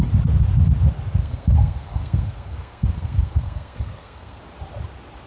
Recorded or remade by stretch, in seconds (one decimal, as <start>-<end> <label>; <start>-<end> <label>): 0.0-1.2 recorded; 1.2-4.4 remade; 4.4-5.3 recorded